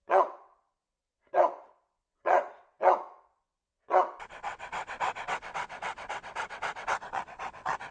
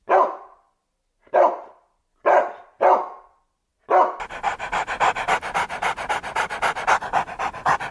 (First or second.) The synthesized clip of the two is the first